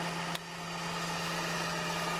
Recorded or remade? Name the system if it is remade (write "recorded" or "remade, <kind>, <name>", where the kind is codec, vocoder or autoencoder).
recorded